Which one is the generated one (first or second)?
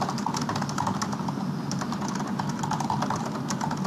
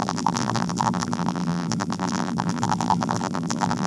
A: second